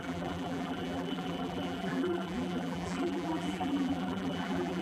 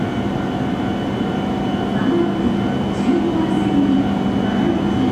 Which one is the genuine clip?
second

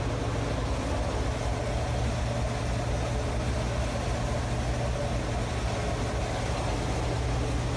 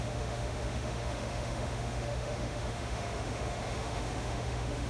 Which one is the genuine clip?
first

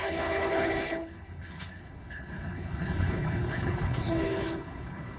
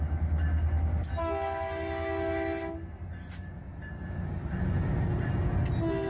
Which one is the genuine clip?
second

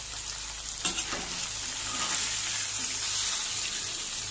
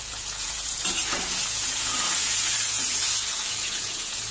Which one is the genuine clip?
first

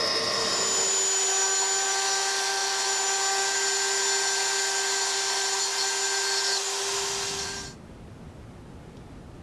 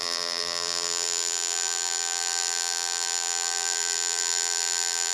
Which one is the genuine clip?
first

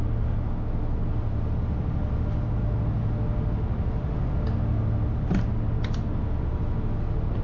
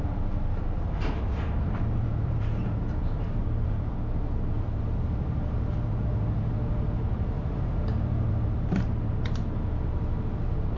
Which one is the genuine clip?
first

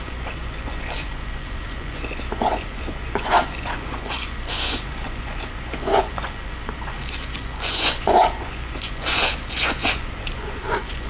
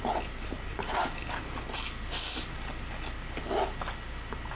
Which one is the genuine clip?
second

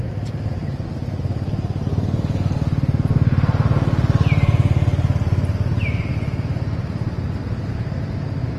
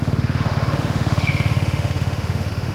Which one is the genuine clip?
first